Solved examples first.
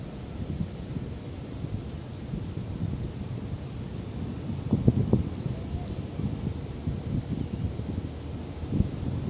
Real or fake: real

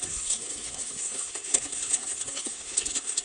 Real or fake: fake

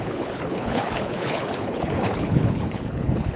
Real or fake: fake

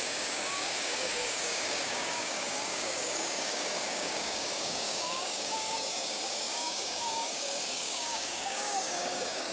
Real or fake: fake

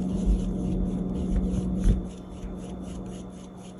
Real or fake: real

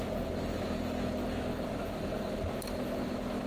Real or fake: real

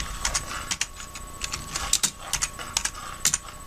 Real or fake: real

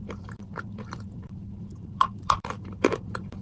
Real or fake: fake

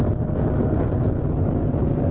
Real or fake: real